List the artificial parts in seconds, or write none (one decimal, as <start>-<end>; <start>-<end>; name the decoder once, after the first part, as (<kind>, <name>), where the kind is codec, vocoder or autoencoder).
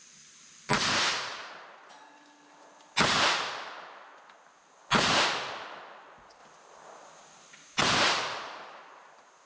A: none